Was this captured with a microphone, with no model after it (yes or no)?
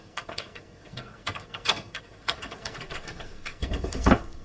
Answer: no